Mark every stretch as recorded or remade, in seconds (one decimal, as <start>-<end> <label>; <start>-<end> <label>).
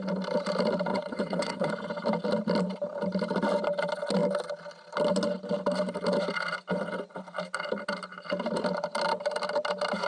0.0-0.9 recorded; 0.9-1.7 remade; 1.7-10.1 recorded